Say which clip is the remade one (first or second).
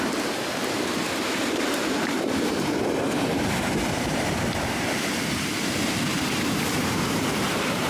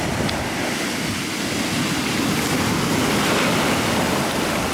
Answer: first